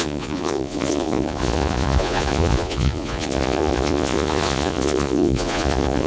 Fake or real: fake